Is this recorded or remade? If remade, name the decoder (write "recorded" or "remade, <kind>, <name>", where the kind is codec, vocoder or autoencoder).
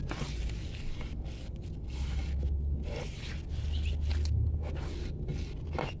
recorded